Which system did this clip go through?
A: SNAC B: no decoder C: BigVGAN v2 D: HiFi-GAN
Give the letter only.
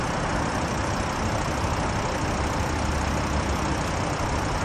B